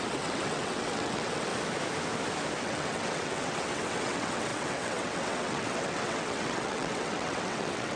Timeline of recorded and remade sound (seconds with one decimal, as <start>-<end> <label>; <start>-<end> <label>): 0.0-1.5 remade; 1.5-2.6 recorded; 2.6-8.0 remade